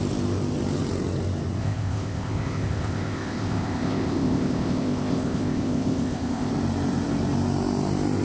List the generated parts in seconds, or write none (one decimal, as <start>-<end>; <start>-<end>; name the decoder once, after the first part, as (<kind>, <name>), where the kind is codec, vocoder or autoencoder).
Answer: 1.6-6.5 (codec, ZipCodec)